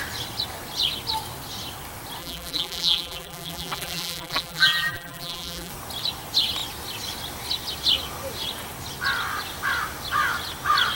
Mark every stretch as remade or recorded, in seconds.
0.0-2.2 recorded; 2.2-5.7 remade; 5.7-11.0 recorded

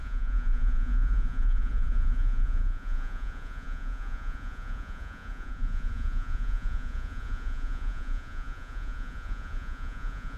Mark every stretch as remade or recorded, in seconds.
0.0-10.4 remade

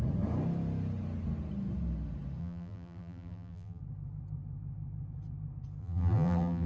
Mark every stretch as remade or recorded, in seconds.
0.0-2.4 recorded; 2.4-3.8 remade; 3.8-5.8 recorded; 5.8-6.7 remade

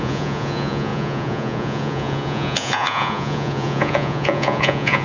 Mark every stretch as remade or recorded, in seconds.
0.0-5.0 remade

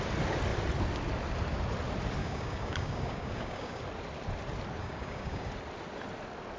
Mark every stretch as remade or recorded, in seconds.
0.0-2.2 recorded; 2.2-3.8 remade; 3.8-4.8 recorded; 4.8-5.5 remade; 5.5-6.6 recorded

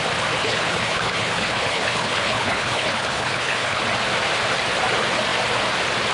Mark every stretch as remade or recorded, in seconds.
0.0-0.4 recorded; 0.4-3.8 remade; 3.8-6.1 recorded

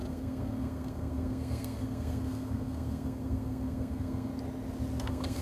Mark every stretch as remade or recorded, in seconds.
0.0-4.3 remade; 4.3-5.0 recorded; 5.0-5.4 remade

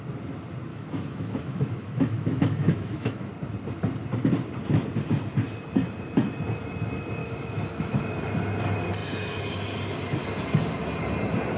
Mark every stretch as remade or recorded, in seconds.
0.0-0.7 recorded; 0.7-3.3 remade; 3.3-7.2 recorded; 7.2-8.0 remade; 8.0-11.6 recorded